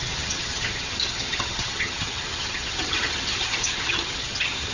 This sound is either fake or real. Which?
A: fake